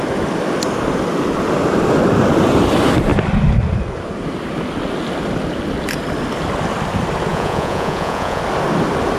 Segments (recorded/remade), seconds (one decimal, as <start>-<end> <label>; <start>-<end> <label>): 0.0-7.3 recorded; 7.3-8.4 remade; 8.4-9.2 recorded